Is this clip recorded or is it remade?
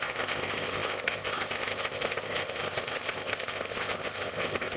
remade